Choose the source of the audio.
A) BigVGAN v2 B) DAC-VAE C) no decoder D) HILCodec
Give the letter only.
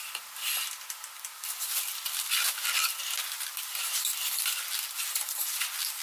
C